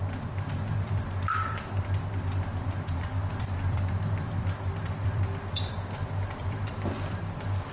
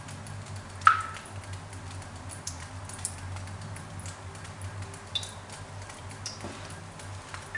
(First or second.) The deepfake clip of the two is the first